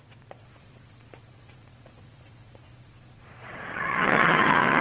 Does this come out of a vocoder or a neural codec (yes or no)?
yes